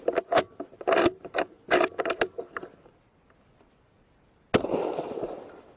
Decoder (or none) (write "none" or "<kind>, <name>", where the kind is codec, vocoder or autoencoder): none